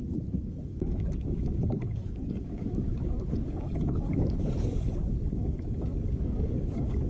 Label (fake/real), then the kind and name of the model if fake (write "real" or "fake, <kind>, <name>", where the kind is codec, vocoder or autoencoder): fake, codec, DAC